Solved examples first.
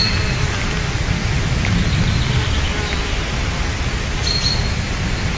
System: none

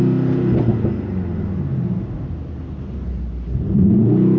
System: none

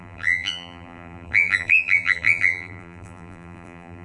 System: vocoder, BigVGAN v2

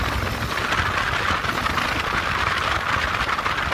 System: none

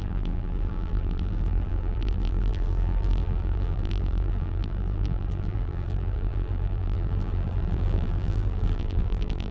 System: vocoder, BigVGAN v2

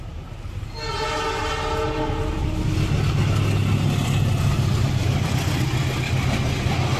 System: none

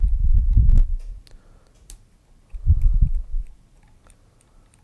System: vocoder, BigVGAN v2